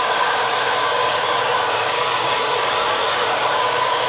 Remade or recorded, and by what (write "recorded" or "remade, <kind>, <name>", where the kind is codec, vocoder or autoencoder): remade, codec, DAC